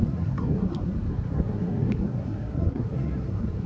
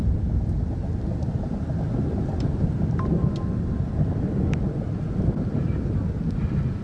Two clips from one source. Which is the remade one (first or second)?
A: first